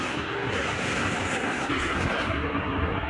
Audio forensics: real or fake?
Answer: fake